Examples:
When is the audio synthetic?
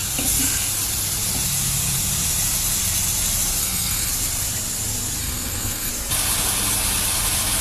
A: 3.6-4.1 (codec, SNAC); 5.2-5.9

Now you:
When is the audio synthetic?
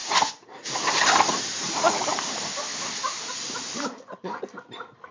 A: none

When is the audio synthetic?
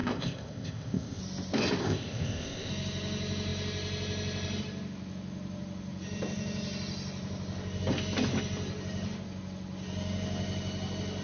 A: 0.0-1.2 (codec, ZipCodec); 1.8-2.7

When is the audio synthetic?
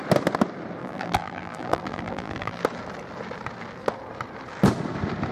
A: 0.8-2.6 (vocoder, BigVGAN v2)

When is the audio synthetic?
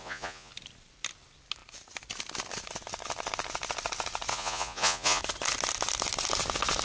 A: 0.0-0.5 (vocoder, Vocos); 4.3-5.2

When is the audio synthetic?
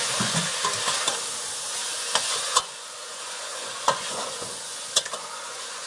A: 0.0-0.5 (vocoder, Vocos); 1.3-5.9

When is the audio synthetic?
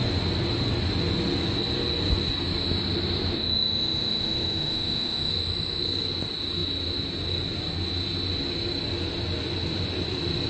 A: 3.3-5.3 (autoencoder, DAC-VAE)